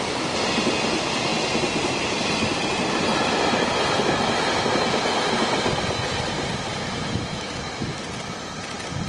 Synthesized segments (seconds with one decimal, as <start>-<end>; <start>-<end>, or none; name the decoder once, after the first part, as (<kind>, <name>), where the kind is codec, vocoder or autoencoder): 6.7-8.0 (autoencoder, DAC-VAE)